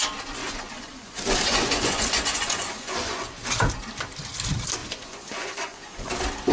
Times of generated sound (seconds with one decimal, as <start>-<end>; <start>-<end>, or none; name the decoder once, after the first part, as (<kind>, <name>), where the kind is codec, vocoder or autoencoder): 0.4-3.6 (vocoder, Vocos); 4.8-6.1